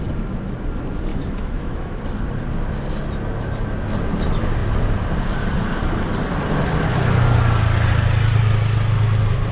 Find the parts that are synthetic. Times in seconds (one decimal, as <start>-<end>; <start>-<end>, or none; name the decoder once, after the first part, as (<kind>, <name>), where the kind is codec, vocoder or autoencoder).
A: 1.1-2.0 (autoencoder, DAC-VAE)